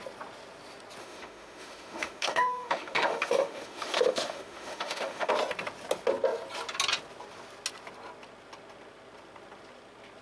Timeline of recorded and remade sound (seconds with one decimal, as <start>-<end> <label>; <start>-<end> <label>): 0.0-1.0 recorded; 1.0-5.3 remade; 5.3-10.2 recorded